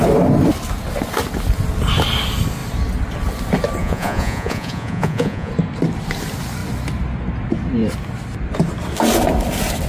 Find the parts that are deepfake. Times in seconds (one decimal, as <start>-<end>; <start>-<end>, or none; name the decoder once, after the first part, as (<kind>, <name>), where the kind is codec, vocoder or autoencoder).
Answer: 3.8-5.5 (vocoder, Vocos)

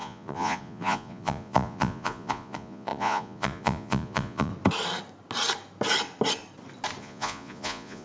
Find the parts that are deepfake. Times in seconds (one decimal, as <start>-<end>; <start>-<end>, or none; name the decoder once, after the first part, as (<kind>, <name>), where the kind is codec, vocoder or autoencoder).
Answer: 0.0-4.5 (vocoder, Vocos); 7.0-8.0

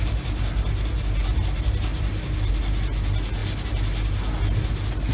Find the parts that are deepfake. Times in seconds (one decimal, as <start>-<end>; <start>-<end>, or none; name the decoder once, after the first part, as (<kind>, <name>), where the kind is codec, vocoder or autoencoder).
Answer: none

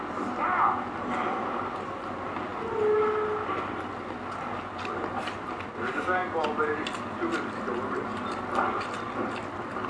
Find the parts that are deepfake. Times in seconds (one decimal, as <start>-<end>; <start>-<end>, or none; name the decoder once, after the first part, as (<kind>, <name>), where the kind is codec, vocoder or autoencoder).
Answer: none